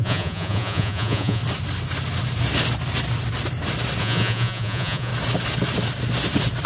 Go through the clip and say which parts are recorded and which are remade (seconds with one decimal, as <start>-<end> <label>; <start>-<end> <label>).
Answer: 0.0-1.4 remade; 1.4-4.0 recorded; 4.0-5.1 remade; 5.1-6.7 recorded